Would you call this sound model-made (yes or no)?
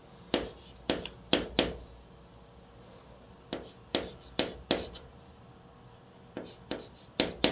no